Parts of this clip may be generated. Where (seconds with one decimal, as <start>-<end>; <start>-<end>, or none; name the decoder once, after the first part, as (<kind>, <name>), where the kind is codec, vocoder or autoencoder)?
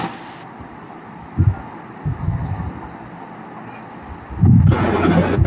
2.2-2.7 (vocoder, HiFi-GAN)